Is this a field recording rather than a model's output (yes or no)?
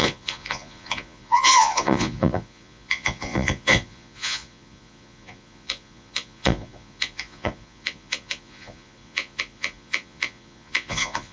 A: no